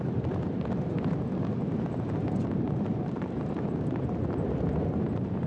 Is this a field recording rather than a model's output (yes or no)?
yes